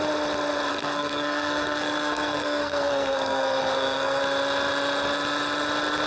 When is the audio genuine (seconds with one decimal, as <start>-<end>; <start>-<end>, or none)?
0.0-0.7; 4.2-6.1